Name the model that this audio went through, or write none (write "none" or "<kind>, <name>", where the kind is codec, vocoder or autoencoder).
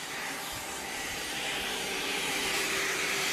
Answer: vocoder, BigVGAN v2